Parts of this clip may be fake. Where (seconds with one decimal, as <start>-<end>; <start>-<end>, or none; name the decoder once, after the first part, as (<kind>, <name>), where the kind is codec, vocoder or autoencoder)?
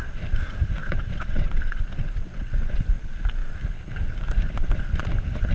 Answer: 0.8-2.7 (vocoder, WaveNeXt)